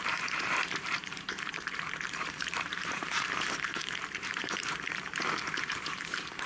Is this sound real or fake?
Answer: fake